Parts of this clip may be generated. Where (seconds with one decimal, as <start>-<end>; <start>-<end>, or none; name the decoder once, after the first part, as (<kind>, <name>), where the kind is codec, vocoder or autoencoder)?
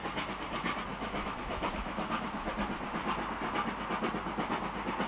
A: 0.9-2.5 (autoencoder, DAC-VAE)